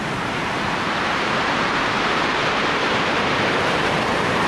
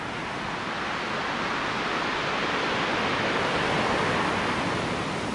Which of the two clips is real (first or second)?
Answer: second